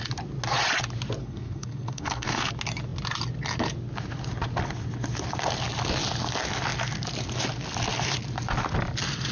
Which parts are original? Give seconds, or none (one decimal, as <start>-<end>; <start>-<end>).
0.0-1.2; 2.5-9.3